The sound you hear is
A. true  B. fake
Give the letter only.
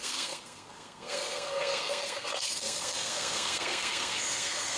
B